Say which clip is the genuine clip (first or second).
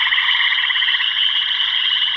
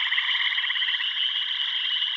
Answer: second